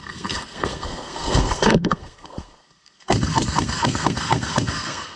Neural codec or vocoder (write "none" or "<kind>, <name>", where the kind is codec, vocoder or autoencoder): codec, SNAC